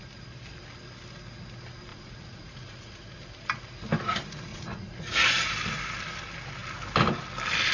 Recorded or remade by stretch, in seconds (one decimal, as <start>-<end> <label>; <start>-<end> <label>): 0.0-1.9 recorded; 1.9-3.0 remade; 3.0-4.5 recorded; 4.5-5.3 remade; 5.3-7.7 recorded